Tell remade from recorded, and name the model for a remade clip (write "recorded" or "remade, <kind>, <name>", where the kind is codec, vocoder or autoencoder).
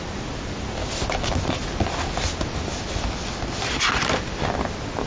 recorded